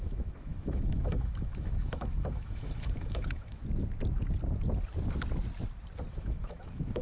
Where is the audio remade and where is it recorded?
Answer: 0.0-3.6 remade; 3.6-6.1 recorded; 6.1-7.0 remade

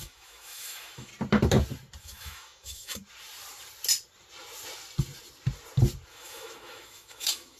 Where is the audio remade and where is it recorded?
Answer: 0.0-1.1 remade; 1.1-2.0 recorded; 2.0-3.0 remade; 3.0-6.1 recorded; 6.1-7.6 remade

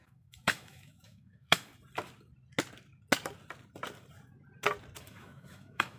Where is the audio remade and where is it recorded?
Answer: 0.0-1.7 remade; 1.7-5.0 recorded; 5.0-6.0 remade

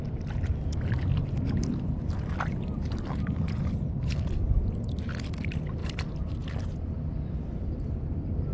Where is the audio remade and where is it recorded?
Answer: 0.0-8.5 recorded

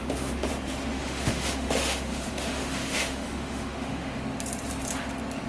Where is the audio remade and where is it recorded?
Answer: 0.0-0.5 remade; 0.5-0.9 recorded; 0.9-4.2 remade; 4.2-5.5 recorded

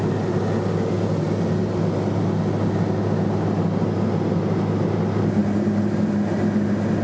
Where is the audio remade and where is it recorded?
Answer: 0.0-7.0 recorded

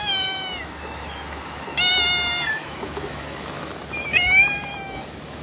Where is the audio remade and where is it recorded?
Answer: 0.0-1.9 remade; 1.9-2.5 recorded; 2.5-5.4 remade

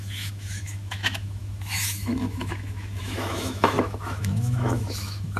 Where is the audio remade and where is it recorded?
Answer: 0.0-5.4 remade